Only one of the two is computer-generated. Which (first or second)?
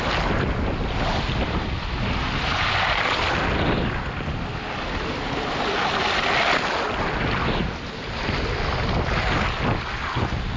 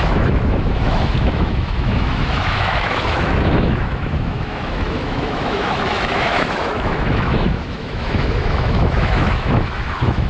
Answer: second